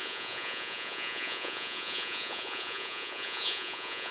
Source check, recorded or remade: remade